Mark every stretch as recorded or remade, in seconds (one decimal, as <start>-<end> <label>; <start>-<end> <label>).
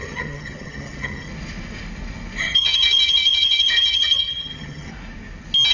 0.0-1.3 remade; 1.3-2.4 recorded; 2.4-4.9 remade; 4.9-5.7 recorded